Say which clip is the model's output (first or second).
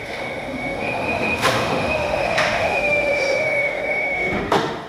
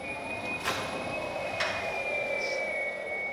first